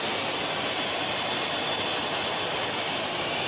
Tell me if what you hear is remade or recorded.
recorded